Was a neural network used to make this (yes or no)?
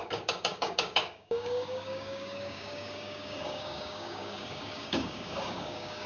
yes